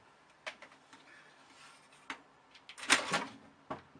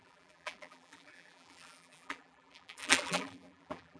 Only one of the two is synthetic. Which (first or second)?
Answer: second